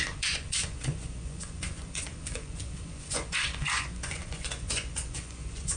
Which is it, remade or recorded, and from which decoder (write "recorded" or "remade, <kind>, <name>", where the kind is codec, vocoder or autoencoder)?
remade, vocoder, Vocos